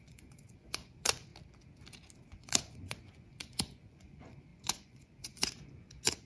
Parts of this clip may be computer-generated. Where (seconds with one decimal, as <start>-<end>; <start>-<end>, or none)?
0.0-1.3; 2.3-6.3

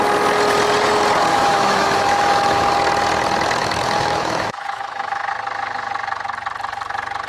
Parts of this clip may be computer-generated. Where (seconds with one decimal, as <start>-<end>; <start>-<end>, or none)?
1.3-2.7; 3.6-5.3

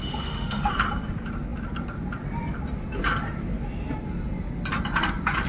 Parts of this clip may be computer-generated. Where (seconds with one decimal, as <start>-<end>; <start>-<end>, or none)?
0.0-0.7

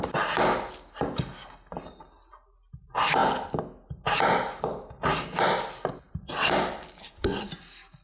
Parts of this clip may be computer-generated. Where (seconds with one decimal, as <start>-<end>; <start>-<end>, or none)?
7.0-7.5

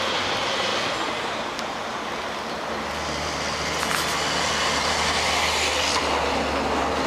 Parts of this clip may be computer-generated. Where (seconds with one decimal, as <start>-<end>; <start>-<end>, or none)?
none

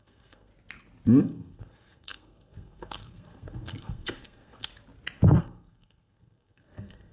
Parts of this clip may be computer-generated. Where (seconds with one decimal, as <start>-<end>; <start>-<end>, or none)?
0.0-0.5; 1.2-4.7; 5.4-7.1

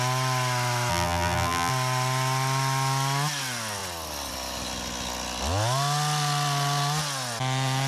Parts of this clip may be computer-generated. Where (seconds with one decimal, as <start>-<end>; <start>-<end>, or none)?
0.9-1.7

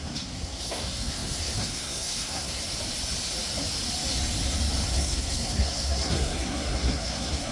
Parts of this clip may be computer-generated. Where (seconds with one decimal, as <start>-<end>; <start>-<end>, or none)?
0.0-2.6; 4.9-7.5